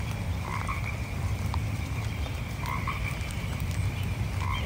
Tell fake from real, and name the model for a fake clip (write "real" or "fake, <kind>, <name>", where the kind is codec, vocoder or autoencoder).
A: fake, vocoder, BigVGAN v2